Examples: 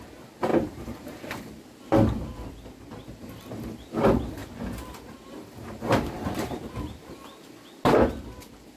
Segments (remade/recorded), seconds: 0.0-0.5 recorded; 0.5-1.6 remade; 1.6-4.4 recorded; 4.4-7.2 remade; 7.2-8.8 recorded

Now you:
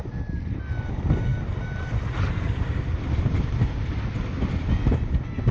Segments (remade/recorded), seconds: 0.0-1.3 recorded; 1.3-3.4 remade; 3.4-5.5 recorded